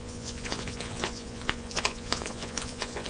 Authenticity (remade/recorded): remade